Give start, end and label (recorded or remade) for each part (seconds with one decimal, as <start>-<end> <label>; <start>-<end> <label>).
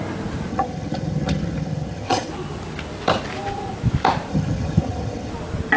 0.0-0.5 recorded; 0.5-2.3 remade; 2.3-4.3 recorded; 4.3-5.3 remade; 5.3-5.8 recorded